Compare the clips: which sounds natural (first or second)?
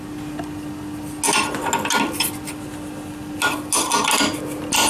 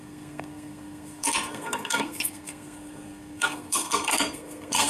first